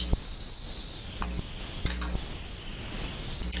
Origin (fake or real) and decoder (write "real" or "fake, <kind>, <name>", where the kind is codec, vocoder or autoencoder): real